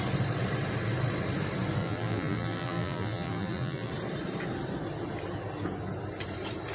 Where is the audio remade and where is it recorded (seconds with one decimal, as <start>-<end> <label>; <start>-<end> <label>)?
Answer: 0.0-1.8 recorded; 1.8-3.9 remade; 3.9-6.7 recorded